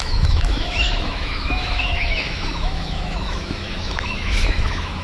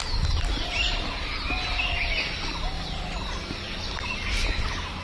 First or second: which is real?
second